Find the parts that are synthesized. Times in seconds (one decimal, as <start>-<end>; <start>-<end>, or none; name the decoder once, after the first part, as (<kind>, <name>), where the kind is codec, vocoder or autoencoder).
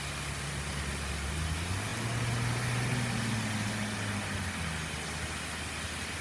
none